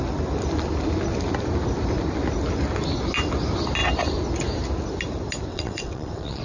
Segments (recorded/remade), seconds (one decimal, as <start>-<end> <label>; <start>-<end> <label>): 0.0-5.5 recorded; 5.5-6.4 remade